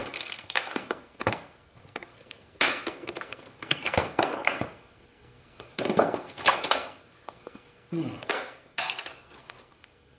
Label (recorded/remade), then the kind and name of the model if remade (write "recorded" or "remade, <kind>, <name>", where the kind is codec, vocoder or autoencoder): remade, codec, SNAC